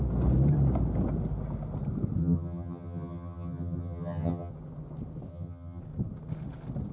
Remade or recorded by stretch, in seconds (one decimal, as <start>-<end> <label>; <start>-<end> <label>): 0.0-2.2 recorded; 2.2-4.5 remade; 4.5-5.3 recorded; 5.3-5.8 remade; 5.8-6.9 recorded